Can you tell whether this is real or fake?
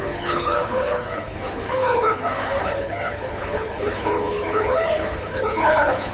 fake